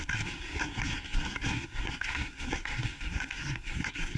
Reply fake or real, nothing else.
fake